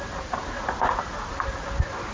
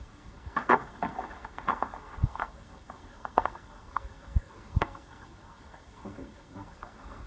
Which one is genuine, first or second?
first